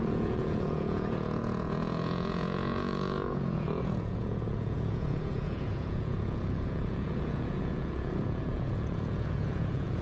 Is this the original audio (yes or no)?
no